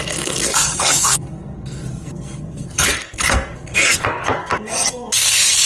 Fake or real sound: fake